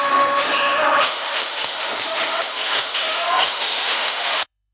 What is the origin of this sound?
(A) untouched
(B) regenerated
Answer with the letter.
B